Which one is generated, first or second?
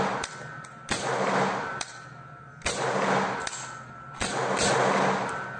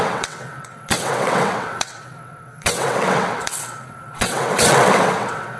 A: second